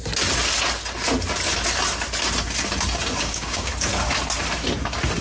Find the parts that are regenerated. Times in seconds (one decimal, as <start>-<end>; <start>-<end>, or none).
3.2-3.7